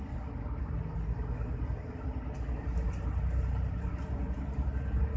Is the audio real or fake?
real